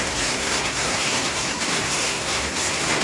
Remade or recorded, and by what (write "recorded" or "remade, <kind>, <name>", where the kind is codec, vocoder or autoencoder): remade, codec, SNAC